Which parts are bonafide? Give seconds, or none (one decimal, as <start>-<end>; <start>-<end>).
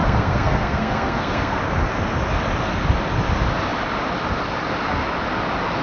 1.6-5.8